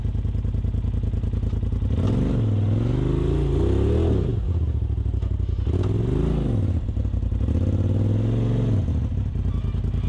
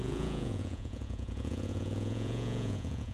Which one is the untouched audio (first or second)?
first